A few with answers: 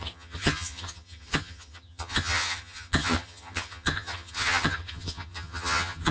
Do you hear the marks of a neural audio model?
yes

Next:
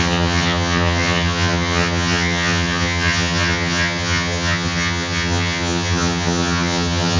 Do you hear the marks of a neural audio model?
yes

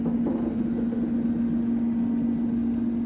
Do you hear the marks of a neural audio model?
no